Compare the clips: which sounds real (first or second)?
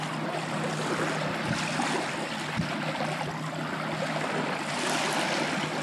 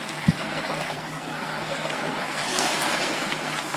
first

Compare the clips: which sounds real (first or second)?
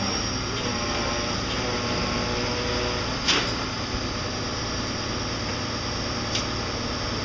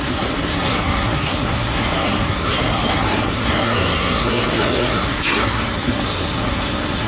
first